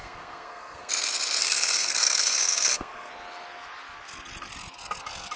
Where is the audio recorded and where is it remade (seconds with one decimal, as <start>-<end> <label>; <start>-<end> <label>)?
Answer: 0.0-0.9 remade; 0.9-1.4 recorded; 1.4-3.1 remade; 3.1-5.4 recorded